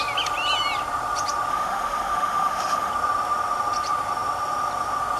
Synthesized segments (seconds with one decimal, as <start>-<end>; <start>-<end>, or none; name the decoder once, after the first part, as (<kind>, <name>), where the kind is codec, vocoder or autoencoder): 1.5-2.9 (autoencoder, DAC-VAE)